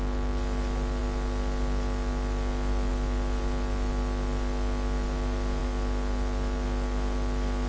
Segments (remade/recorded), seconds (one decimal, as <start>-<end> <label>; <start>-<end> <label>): 0.0-7.7 recorded